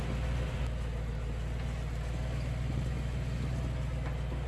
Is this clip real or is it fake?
real